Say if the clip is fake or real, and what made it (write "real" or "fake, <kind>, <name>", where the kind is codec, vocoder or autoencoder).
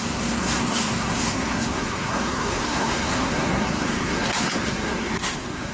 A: fake, codec, SNAC